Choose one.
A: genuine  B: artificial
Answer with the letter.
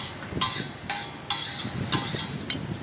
A